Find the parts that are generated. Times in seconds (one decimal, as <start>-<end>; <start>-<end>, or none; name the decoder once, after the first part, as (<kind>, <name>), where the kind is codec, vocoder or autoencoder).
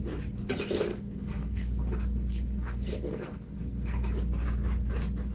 0.9-4.1 (codec, SNAC)